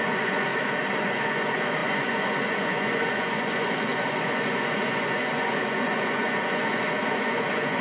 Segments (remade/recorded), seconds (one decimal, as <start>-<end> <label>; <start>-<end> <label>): 0.0-0.5 remade; 0.5-1.0 recorded; 1.0-7.8 remade